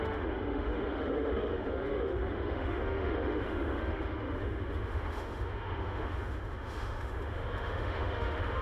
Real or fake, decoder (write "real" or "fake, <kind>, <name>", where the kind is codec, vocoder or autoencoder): fake, autoencoder, DAC-VAE